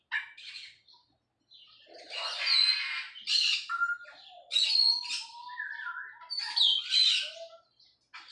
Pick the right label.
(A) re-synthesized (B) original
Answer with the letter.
B